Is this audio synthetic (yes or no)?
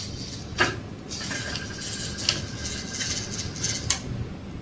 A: no